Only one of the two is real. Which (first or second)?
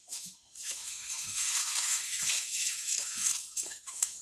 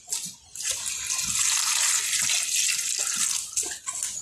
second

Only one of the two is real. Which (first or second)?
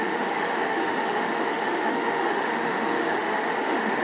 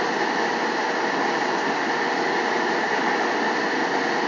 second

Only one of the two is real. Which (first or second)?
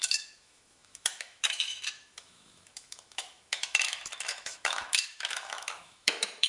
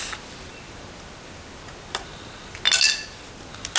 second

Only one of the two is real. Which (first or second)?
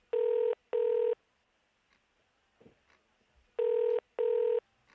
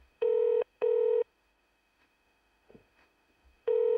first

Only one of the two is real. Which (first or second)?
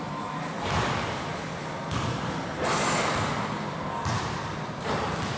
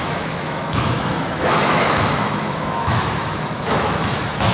first